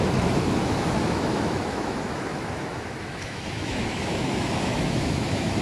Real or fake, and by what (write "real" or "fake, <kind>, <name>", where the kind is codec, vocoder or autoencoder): fake, autoencoder, DAC-VAE